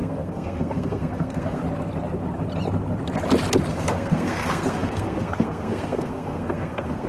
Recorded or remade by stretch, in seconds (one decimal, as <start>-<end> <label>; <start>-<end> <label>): 0.0-1.6 remade; 1.6-3.7 recorded; 3.7-7.1 remade